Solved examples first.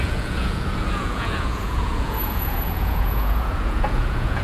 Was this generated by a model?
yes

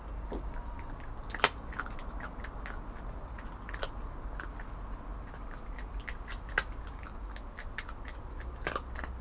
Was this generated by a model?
no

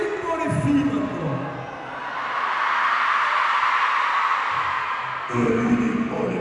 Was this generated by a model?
no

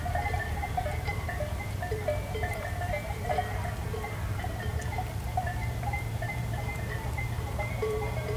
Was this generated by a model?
yes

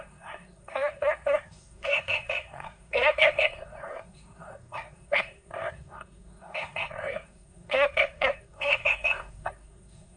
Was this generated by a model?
yes